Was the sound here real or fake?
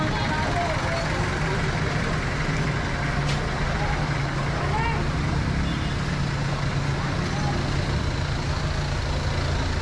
real